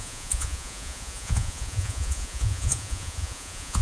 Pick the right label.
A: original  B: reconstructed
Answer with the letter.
B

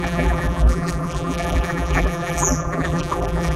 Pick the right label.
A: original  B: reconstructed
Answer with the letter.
B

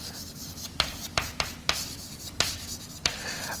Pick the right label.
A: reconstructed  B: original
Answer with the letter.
A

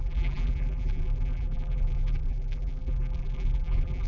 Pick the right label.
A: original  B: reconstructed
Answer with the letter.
B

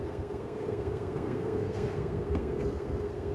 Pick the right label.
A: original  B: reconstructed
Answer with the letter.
B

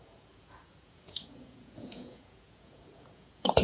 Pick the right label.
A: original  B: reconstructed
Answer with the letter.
B